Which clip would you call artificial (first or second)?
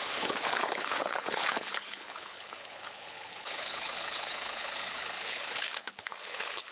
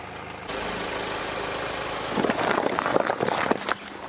first